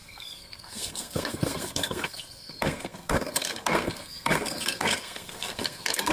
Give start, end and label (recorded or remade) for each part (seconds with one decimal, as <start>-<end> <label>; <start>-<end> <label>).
0.0-6.1 remade